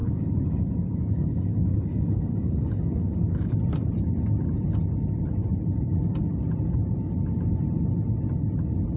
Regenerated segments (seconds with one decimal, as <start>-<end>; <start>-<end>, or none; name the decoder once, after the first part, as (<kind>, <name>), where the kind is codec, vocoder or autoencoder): 0.0-3.5 (codec, DAC)